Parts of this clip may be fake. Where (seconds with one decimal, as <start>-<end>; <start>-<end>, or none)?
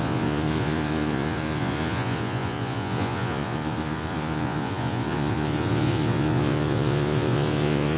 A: 0.0-8.0